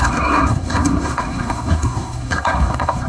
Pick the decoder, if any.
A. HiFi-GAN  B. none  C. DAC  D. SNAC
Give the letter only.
D